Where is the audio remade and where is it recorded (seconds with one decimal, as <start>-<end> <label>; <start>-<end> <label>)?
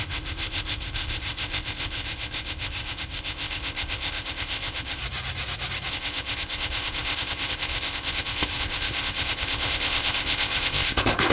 0.0-5.0 remade; 5.0-5.9 recorded; 5.9-11.3 remade